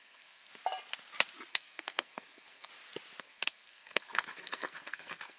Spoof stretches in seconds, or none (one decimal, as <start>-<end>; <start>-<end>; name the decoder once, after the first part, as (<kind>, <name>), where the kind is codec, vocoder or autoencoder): 0.0-0.5 (codec, SNAC); 1.5-2.7; 3.2-5.4

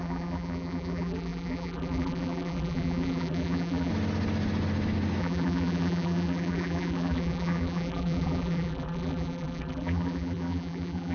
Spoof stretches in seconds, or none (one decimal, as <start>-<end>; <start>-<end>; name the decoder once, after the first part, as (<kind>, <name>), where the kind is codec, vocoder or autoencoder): 0.0-3.9 (vocoder, BigVGAN v2); 5.2-11.1